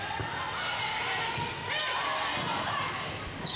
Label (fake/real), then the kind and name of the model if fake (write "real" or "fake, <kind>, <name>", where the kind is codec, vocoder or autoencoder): real